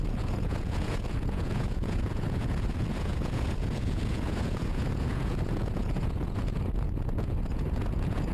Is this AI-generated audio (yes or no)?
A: yes